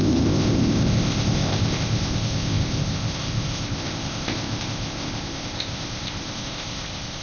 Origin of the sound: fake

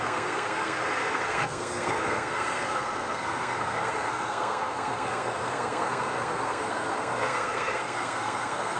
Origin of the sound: fake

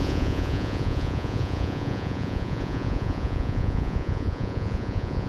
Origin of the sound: fake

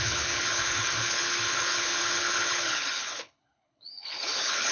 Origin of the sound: fake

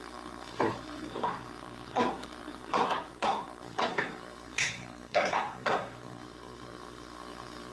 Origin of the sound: fake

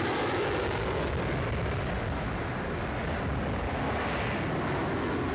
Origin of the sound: real